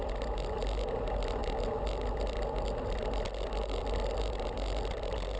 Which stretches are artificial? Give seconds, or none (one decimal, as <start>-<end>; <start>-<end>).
none